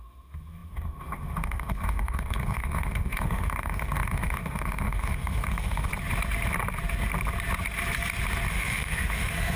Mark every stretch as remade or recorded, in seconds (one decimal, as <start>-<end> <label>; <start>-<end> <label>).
0.0-5.9 remade; 5.9-8.5 recorded; 8.5-9.6 remade